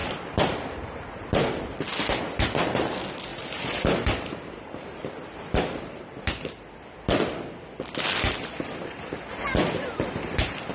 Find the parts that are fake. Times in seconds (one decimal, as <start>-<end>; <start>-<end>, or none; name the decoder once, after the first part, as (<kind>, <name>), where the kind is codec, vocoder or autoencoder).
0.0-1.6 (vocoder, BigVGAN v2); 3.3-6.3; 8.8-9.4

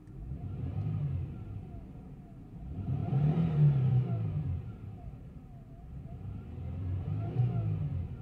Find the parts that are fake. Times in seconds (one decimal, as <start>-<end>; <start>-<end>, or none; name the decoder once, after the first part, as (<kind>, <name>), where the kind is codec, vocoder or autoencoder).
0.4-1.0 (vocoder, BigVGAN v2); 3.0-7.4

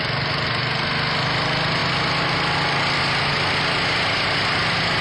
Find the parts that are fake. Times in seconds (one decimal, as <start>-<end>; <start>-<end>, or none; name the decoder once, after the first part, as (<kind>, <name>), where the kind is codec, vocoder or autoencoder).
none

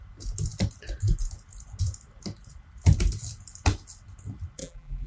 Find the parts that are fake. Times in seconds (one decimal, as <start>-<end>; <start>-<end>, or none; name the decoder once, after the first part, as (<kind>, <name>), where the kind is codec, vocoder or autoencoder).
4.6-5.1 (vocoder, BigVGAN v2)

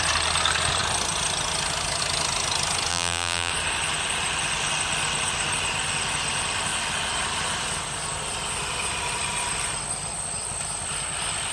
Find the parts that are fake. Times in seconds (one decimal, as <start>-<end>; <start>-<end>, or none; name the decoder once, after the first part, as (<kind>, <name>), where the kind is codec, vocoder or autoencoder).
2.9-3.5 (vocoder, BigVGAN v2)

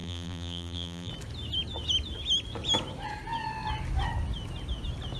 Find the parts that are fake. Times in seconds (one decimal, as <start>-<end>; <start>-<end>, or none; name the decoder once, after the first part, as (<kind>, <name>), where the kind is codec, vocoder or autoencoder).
0.0-1.1 (vocoder, BigVGAN v2)

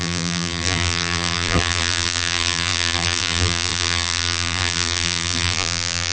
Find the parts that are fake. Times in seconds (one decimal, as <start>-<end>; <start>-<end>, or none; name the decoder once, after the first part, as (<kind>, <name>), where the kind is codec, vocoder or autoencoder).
0.0-6.1 (vocoder, BigVGAN v2)

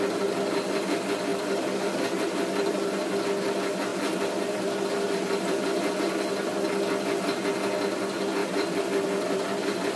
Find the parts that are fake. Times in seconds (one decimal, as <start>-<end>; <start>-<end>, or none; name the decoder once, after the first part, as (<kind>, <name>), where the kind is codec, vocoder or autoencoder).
1.3-2.7 (vocoder, BigVGAN v2); 3.9-5.9; 8.4-10.0